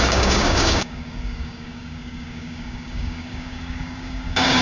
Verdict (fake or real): fake